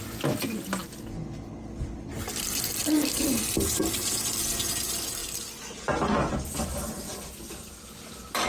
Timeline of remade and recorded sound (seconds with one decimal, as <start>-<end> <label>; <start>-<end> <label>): 0.0-7.1 recorded; 7.1-8.0 remade; 8.0-8.5 recorded